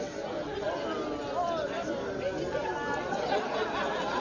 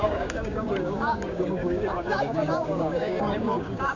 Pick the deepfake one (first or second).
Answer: second